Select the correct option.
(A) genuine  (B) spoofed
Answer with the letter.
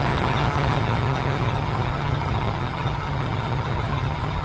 B